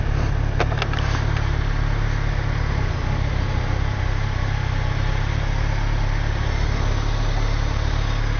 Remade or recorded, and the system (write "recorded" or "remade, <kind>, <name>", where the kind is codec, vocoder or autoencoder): recorded